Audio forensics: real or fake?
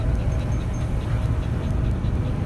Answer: real